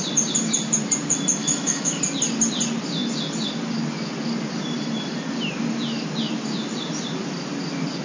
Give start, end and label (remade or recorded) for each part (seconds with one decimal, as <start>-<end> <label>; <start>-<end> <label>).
0.0-1.4 recorded; 1.4-2.0 remade; 2.0-8.0 recorded